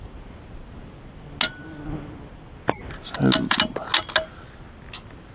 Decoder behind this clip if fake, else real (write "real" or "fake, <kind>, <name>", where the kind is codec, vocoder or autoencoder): real